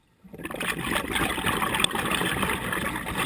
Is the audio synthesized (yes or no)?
no